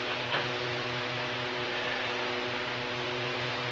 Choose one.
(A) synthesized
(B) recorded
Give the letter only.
A